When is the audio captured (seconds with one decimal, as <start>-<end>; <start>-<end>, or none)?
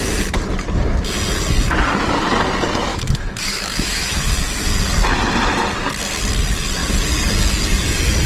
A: 0.0-2.9; 4.3-8.3